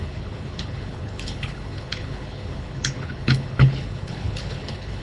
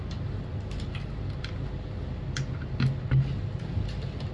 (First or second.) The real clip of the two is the second